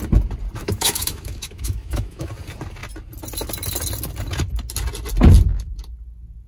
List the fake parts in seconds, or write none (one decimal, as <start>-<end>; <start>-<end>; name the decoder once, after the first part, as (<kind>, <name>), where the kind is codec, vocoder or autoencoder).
0.6-2.3 (autoencoder, DAC-VAE)